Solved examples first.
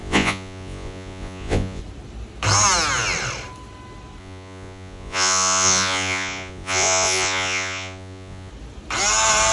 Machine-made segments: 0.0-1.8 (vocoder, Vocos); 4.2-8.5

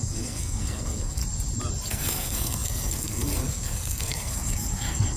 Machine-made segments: 0.0-1.2 (codec, SNAC); 1.9-5.2

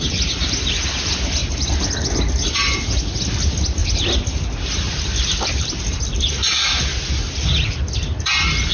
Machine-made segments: 1.4-1.9 (vocoder, BigVGAN v2); 3.8-6.0

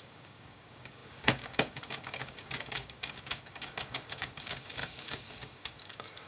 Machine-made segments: 0.0-6.3 (codec, DAC)

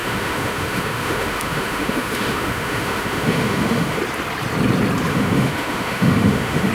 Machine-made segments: 0.0-4.0 (autoencoder, DAC-VAE); 5.1-6.7

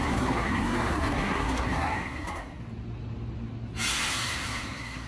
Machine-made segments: 0.0-2.6 (codec, SNAC); 3.9-5.1

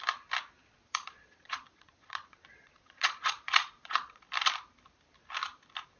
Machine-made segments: 0.6-4.2 (vocoder, Vocos)

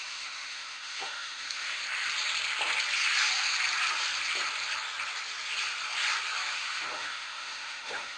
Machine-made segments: 0.0-1.8 (autoencoder, DAC-VAE); 6.5-8.2